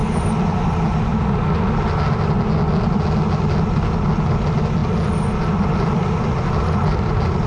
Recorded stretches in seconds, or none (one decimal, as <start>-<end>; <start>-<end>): 0.0-7.5